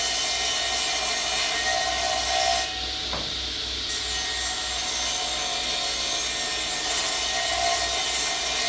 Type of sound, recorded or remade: recorded